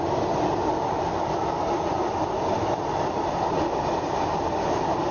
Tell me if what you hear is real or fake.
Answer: real